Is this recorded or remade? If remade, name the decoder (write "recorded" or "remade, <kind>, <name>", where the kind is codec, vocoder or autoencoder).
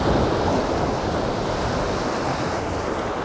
recorded